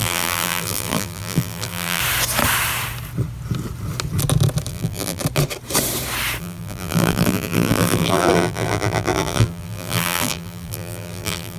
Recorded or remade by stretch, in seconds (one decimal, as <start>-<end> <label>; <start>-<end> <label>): 0.0-2.0 remade; 2.0-4.7 recorded; 4.7-5.2 remade; 5.2-6.4 recorded; 6.4-11.6 remade